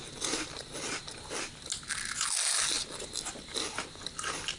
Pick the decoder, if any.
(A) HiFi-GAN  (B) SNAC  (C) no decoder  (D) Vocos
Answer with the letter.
C